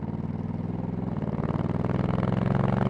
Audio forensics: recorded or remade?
recorded